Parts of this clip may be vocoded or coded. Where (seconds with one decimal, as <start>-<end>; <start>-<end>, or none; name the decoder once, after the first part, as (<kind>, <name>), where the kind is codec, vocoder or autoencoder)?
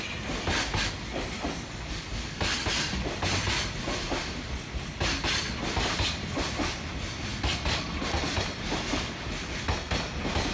none